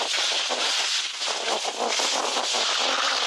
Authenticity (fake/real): real